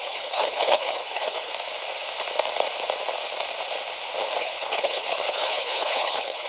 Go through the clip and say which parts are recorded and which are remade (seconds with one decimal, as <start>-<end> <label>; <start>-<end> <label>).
0.0-1.5 remade; 1.5-4.4 recorded; 4.4-6.5 remade